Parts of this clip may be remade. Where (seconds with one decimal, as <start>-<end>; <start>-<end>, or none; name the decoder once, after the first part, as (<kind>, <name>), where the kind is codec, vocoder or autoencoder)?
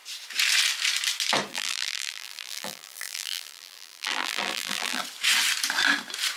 1.5-5.0 (vocoder, BigVGAN v2)